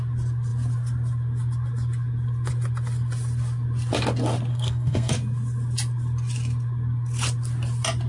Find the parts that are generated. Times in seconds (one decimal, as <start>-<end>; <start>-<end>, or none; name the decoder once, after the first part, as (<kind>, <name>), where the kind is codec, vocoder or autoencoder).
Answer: 4.5-5.1 (codec, SNAC)